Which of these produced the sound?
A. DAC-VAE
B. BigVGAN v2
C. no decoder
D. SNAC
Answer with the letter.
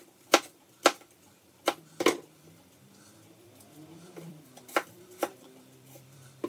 B